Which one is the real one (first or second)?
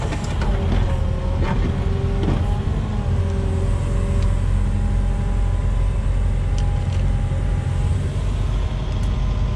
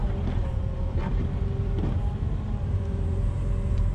first